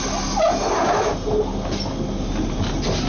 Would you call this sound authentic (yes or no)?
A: yes